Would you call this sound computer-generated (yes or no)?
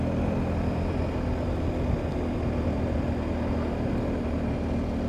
no